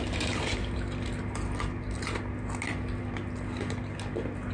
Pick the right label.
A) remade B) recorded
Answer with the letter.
B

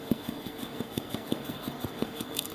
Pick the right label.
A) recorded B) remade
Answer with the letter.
B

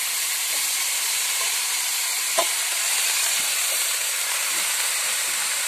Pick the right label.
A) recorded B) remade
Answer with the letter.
B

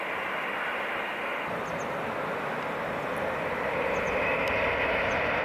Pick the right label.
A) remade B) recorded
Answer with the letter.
B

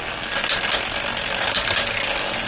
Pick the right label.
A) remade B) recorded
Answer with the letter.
B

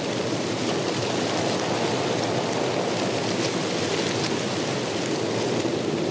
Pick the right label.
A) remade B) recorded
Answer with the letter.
B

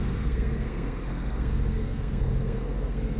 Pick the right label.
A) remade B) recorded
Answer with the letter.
A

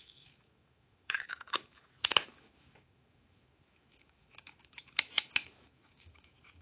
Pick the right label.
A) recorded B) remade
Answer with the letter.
B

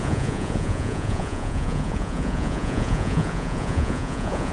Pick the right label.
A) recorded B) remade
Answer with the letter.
B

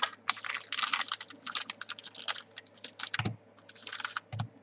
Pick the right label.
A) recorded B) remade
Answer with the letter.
A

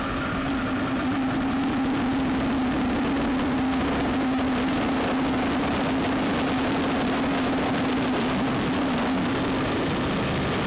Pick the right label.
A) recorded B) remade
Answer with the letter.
A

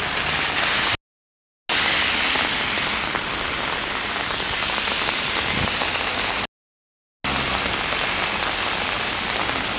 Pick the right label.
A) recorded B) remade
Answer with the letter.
A